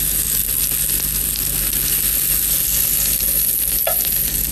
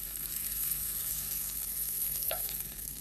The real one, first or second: first